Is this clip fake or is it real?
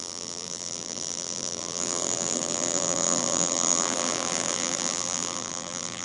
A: fake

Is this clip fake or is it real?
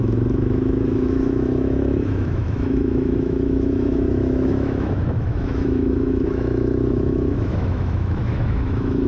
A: fake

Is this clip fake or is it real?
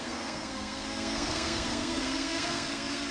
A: fake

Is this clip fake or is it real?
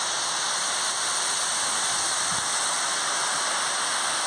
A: real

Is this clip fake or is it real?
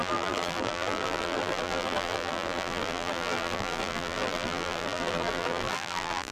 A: fake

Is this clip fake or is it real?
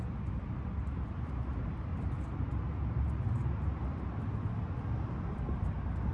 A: real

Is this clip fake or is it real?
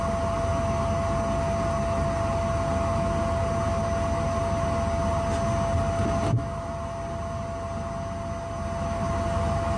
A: real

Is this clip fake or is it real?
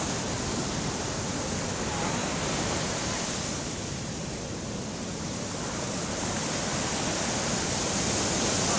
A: real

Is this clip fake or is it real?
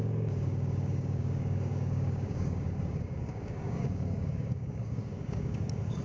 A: fake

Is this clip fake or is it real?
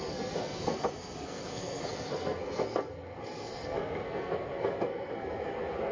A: fake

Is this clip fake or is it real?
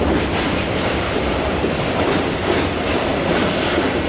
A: fake